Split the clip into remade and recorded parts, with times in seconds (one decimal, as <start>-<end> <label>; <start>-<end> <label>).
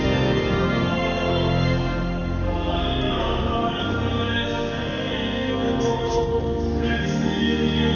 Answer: 0.0-8.0 remade